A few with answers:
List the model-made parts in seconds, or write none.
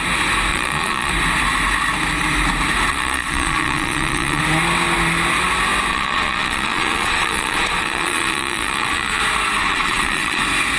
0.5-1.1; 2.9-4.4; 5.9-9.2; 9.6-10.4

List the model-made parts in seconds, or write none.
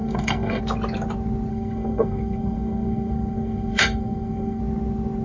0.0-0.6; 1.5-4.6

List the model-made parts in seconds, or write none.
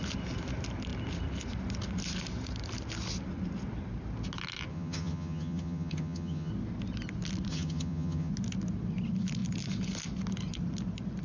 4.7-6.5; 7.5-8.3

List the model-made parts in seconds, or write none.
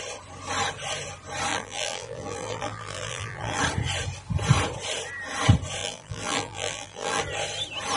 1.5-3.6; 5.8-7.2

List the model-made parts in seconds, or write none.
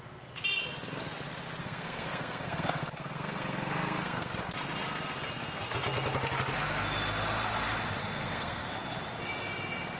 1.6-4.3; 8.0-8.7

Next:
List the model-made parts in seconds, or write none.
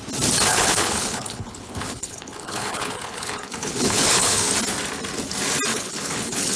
0.5-4.5; 5.7-6.6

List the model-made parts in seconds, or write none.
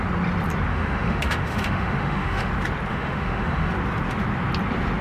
0.7-2.5; 2.9-3.7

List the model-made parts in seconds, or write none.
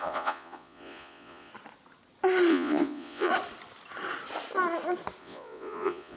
0.0-1.5; 2.5-3.3; 5.2-6.2